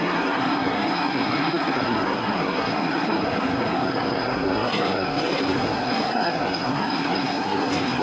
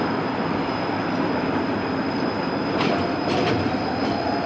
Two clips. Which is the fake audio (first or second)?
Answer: first